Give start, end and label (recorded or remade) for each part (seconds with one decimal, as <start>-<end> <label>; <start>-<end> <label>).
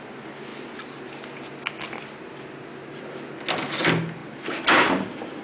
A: 0.0-5.4 recorded